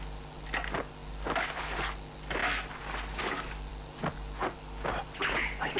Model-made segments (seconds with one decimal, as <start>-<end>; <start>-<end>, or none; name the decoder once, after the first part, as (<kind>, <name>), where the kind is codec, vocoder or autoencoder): none